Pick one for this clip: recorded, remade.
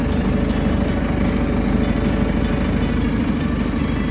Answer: recorded